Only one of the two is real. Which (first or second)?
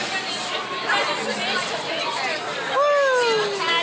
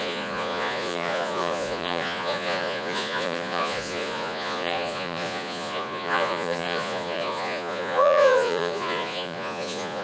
first